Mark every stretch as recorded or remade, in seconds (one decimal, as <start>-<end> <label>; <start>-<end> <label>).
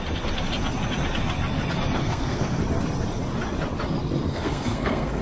0.0-2.0 recorded; 2.0-2.6 remade; 2.6-4.3 recorded; 4.3-5.2 remade